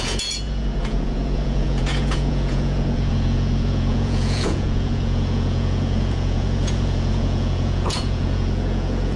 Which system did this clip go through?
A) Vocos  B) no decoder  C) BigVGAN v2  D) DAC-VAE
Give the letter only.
A